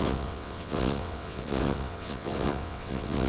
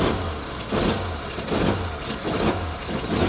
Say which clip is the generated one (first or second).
first